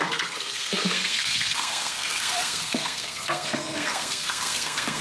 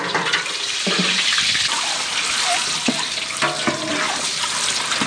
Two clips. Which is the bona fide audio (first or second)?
second